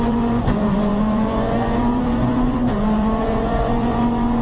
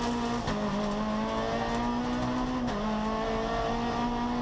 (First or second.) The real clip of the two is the second